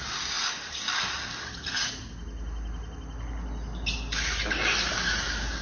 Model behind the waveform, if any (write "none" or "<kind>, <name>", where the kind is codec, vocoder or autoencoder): none